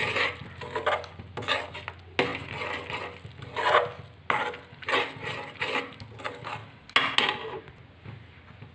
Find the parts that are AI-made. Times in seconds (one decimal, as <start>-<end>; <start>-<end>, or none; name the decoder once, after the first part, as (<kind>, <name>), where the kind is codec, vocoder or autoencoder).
none